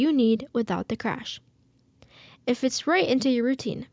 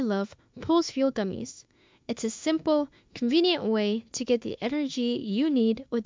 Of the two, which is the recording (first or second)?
first